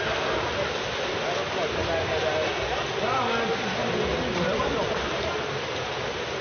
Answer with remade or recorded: recorded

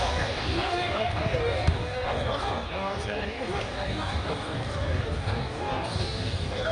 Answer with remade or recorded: remade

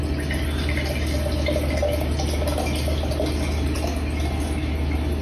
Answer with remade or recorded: recorded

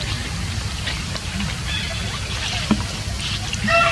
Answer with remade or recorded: recorded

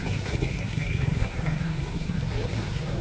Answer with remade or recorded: remade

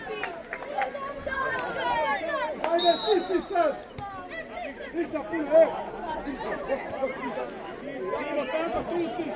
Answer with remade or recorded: recorded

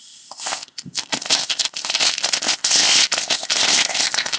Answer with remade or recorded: remade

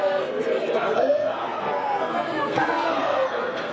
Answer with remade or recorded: remade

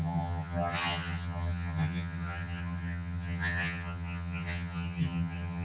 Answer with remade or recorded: remade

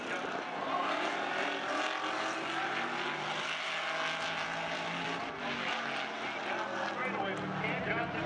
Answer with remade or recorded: recorded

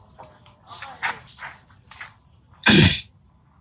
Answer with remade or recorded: remade